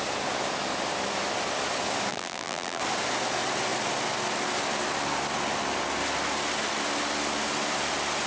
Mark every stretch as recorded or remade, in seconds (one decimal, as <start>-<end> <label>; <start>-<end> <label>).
0.0-2.1 recorded; 2.1-2.8 remade; 2.8-8.3 recorded